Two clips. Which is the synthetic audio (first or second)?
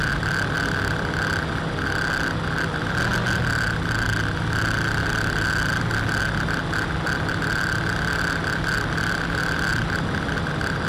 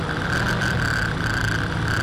second